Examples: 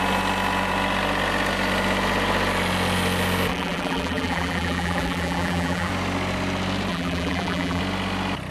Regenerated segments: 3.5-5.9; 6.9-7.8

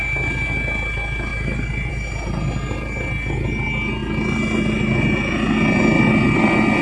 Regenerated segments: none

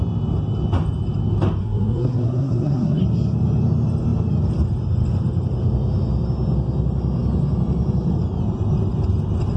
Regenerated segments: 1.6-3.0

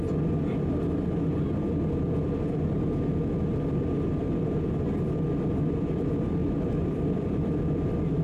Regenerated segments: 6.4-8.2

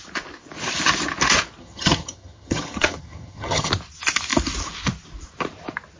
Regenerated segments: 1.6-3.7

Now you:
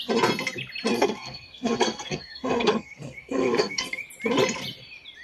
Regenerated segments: 0.9-4.0